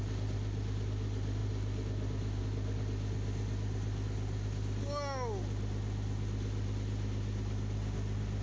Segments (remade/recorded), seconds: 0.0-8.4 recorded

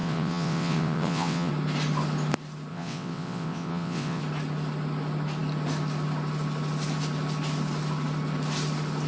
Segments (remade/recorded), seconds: 0.0-1.5 remade; 1.5-2.7 recorded; 2.7-4.2 remade; 4.2-9.1 recorded

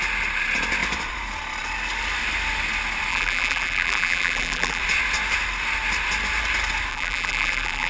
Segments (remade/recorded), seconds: 0.0-3.1 recorded; 3.1-4.8 remade; 4.8-6.9 recorded; 6.9-7.9 remade

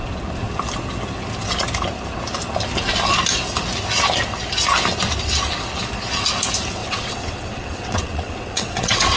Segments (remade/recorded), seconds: 0.0-6.8 recorded; 6.8-9.2 remade

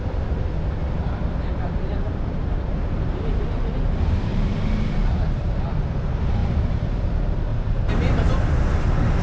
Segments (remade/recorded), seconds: 0.0-1.5 recorded; 1.5-2.7 remade; 2.7-4.3 recorded; 4.3-5.7 remade; 5.7-6.4 recorded; 6.4-7.1 remade; 7.1-7.5 recorded; 7.5-8.3 remade; 8.3-9.2 recorded

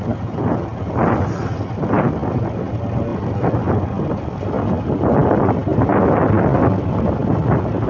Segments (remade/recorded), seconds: 0.0-7.9 recorded